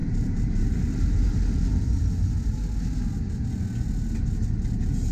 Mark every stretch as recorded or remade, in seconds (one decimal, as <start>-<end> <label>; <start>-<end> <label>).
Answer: 0.0-2.0 remade; 2.0-5.1 recorded